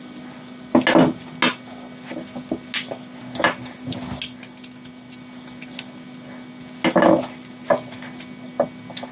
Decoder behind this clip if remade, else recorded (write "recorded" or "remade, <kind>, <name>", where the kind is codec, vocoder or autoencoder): recorded